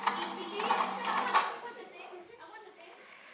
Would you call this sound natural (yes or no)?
no